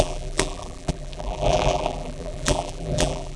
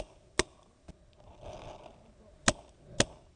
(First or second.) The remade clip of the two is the first